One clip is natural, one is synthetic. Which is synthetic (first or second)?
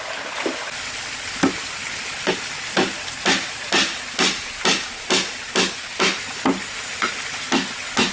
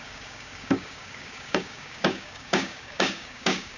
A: second